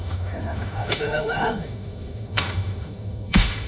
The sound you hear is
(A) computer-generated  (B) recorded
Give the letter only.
A